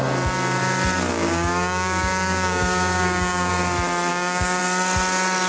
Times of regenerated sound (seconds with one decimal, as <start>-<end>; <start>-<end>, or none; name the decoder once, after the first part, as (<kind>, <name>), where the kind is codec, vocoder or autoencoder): 1.1-3.5 (codec, DAC); 4.1-4.6